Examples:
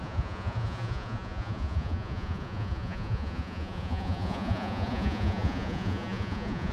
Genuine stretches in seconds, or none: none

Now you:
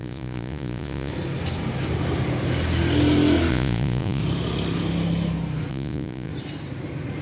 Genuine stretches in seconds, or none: 1.1-3.5; 4.2-5.7; 6.3-7.2

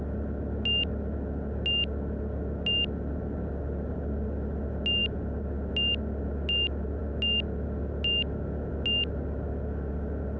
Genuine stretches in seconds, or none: 0.0-10.4

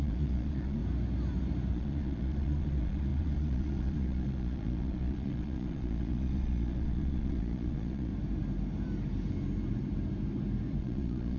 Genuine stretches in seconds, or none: 0.8-1.7; 8.1-10.8

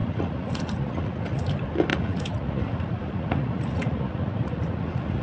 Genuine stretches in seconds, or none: 1.5-1.9